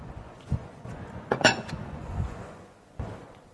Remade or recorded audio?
remade